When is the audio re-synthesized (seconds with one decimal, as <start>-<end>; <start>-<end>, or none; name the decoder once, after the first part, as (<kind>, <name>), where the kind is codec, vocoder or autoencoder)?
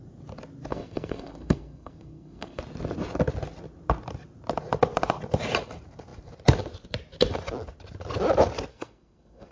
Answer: 0.7-2.6 (codec, SNAC); 8.7-9.5